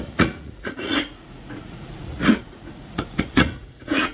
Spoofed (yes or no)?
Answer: yes